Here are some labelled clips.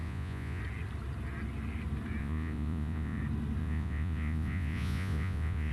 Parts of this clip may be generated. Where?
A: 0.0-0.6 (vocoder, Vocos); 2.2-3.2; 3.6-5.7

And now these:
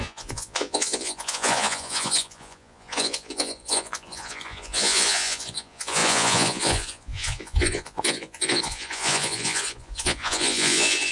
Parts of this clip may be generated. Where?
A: 0.0-11.1 (vocoder, Vocos)

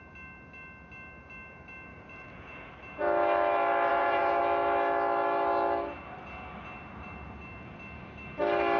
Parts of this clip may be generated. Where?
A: 1.9-2.7 (vocoder, Vocos); 3.9-4.4

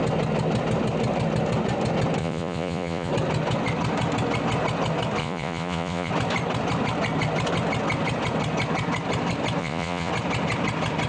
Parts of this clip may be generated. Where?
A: 2.2-3.1 (vocoder, Vocos); 5.2-6.1; 9.6-10.1

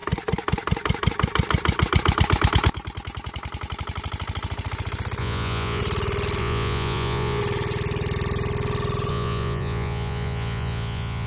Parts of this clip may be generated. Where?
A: 5.2-5.8 (vocoder, Vocos); 6.4-7.4; 9.1-11.3